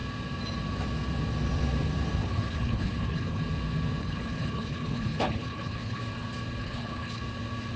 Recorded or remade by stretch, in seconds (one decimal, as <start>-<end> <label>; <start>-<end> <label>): 0.0-2.2 recorded; 2.2-3.4 remade; 3.4-4.0 recorded; 4.0-6.0 remade; 6.0-6.6 recorded; 6.6-7.2 remade; 7.2-7.8 recorded